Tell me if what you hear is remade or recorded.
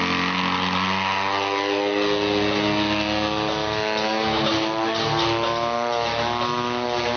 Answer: recorded